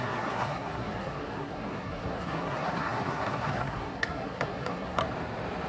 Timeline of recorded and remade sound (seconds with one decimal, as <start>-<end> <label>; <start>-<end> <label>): 0.0-5.0 remade; 5.0-5.7 recorded